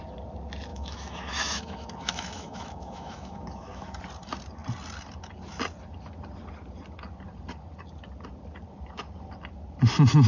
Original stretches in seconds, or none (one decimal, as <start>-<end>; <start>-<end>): 0.0-0.7; 4.0-10.3